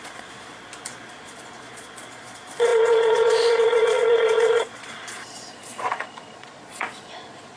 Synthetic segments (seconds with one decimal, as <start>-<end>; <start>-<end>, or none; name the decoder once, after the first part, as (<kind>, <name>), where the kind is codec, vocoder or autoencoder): 0.0-0.5 (vocoder, Vocos); 1.1-7.6